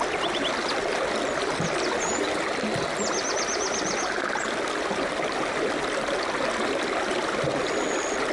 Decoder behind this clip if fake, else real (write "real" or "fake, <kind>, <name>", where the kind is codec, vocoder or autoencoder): real